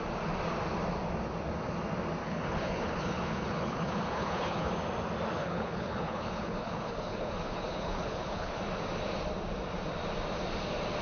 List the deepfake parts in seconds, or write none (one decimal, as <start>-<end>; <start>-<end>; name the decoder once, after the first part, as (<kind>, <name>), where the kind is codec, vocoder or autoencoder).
2.2-4.7 (codec, HILCodec); 5.4-8.6